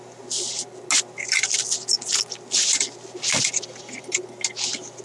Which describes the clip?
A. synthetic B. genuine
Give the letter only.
B